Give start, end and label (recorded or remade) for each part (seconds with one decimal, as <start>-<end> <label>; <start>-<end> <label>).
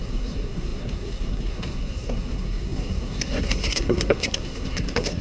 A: 0.0-5.2 remade